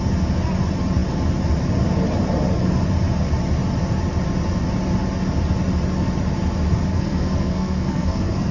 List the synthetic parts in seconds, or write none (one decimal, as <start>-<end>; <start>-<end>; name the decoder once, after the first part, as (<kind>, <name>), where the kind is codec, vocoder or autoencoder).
6.9-8.5 (codec, SNAC)